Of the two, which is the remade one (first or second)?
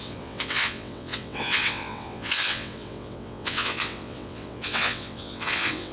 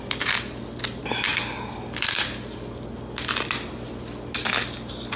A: first